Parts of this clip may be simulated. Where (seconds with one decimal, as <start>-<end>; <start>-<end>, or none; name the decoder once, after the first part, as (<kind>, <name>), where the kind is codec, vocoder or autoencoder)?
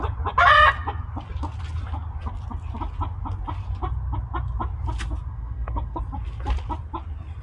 5.3-6.0 (codec, SNAC)